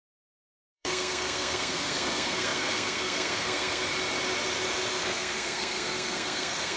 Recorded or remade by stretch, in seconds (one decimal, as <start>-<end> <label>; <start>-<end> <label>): 0.0-3.9 remade; 3.9-4.9 recorded; 4.9-6.8 remade